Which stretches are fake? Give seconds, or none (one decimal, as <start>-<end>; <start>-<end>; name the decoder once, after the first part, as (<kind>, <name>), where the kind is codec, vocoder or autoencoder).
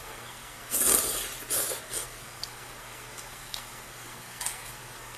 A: 0.0-0.9 (codec, SNAC); 1.8-5.2